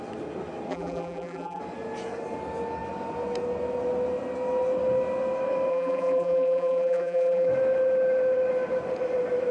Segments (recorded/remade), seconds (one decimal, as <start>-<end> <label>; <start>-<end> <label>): 0.0-0.7 recorded; 0.7-1.6 remade; 1.6-5.7 recorded; 5.7-7.5 remade; 7.5-9.5 recorded